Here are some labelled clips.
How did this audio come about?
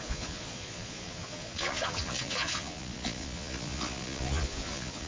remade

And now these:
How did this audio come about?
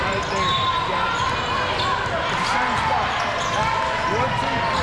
recorded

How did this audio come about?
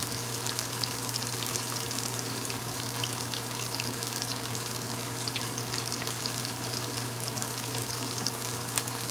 remade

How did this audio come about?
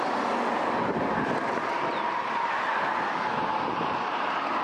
recorded